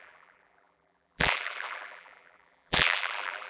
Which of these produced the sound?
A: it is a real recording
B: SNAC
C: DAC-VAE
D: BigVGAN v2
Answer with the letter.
D